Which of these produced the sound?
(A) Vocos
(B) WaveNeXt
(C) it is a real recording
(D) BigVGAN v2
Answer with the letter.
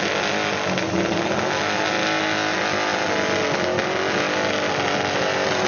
C